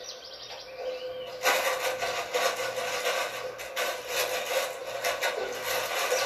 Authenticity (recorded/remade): recorded